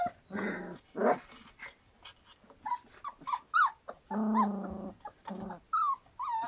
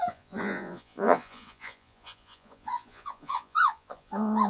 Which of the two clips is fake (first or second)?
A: second